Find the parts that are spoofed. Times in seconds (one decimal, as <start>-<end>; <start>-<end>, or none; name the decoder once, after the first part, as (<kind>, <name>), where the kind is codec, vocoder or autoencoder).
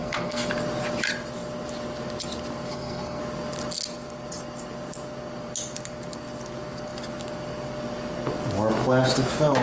0.0-0.5 (codec, SNAC); 2.7-3.2